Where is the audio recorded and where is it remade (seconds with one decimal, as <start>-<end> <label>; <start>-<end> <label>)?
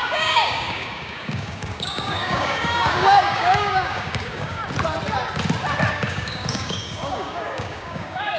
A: 0.0-4.6 remade; 4.6-5.9 recorded; 5.9-8.4 remade